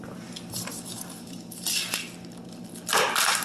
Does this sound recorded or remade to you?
recorded